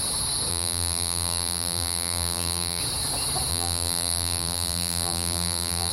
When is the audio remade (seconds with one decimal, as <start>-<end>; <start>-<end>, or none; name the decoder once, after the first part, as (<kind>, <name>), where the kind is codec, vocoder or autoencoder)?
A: 0.5-2.8 (vocoder, BigVGAN v2); 3.5-5.9